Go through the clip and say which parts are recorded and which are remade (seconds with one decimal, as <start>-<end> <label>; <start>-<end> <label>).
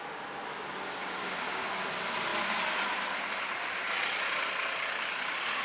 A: 0.0-1.2 recorded; 1.2-1.8 remade; 1.8-5.6 recorded